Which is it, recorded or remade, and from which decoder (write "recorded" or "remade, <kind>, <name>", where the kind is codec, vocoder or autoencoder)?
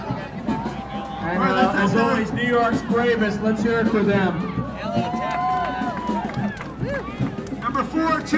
recorded